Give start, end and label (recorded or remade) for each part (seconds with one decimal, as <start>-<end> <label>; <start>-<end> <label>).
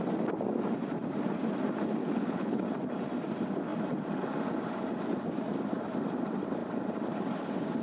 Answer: 0.0-2.0 recorded; 2.0-2.6 remade; 2.6-7.8 recorded